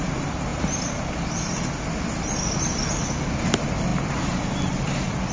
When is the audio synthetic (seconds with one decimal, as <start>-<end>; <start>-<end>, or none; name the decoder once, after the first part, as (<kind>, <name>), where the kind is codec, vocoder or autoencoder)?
none